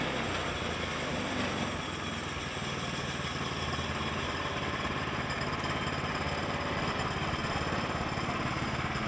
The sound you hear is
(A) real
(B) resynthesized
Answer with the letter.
A